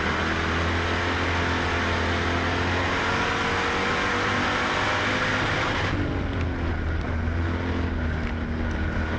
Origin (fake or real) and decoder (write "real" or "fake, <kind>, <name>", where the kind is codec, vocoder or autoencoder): real